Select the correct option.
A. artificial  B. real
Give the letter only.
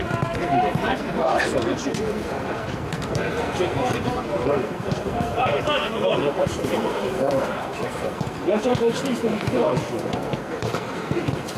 A